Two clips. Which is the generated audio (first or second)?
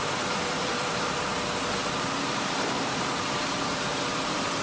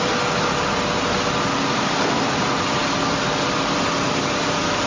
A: first